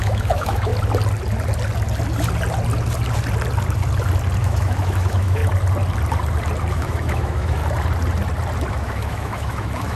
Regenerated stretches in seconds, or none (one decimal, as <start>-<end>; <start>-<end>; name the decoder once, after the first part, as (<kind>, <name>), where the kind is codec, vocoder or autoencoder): 0.0-0.7 (autoencoder, DAC-VAE); 4.4-5.4; 6.7-7.6; 8.7-10.0